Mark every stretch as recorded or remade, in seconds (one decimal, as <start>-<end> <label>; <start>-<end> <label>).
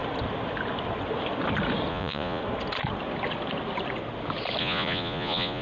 0.0-1.9 recorded; 1.9-2.4 remade; 2.4-4.6 recorded; 4.6-5.6 remade